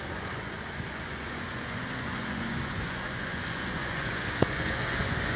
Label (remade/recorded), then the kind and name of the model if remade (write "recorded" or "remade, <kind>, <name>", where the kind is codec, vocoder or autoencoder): remade, vocoder, Vocos